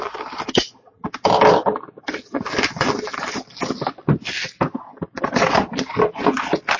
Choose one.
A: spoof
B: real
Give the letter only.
B